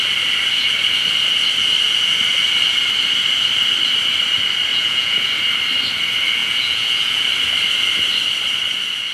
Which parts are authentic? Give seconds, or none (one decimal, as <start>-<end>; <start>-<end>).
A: 0.0-4.7; 5.3-6.4; 7.2-9.1